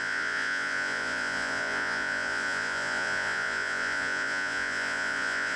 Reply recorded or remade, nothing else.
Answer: remade